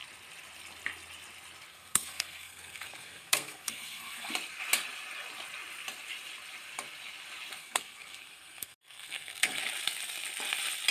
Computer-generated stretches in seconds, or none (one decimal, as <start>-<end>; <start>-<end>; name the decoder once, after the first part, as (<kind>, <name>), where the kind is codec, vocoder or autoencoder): 1.7-4.3 (codec, SNAC); 7.6-9.6